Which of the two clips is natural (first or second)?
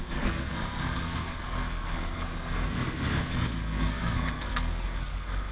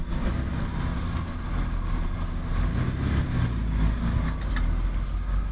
second